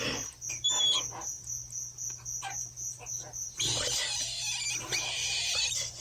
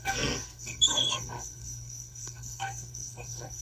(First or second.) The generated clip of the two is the second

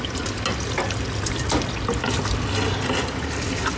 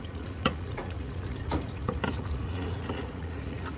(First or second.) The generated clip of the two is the second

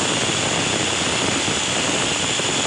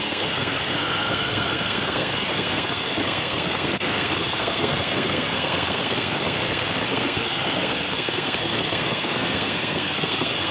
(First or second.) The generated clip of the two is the second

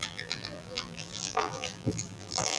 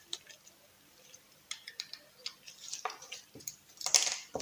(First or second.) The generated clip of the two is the first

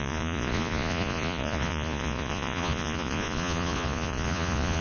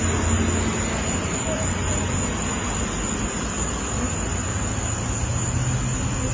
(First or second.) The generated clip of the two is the first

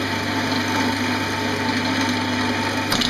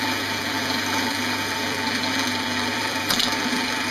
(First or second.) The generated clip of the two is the second